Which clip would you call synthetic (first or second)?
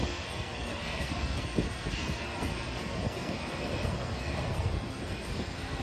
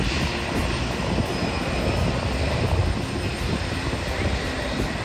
first